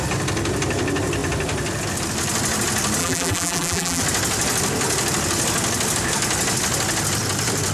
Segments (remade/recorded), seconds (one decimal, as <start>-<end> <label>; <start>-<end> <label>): 0.0-3.0 recorded; 3.0-4.0 remade; 4.0-7.7 recorded